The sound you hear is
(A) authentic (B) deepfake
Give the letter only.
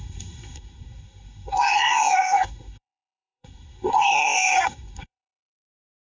B